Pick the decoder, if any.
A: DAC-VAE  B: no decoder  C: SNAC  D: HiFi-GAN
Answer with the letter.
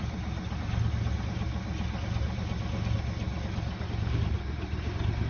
B